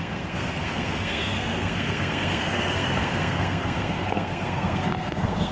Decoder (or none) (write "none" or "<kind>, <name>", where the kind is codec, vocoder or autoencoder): codec, SNAC